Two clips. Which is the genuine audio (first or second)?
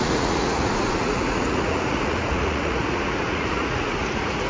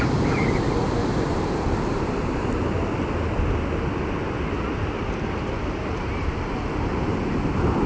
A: second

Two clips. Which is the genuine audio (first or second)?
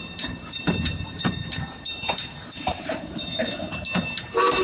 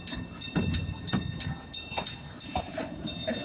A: second